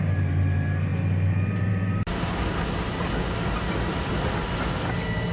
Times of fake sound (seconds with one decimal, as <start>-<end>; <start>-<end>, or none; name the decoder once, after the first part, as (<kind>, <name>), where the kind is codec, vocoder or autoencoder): none